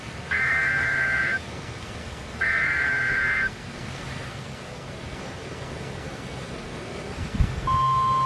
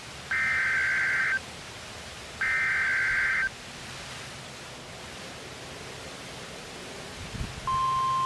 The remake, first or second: first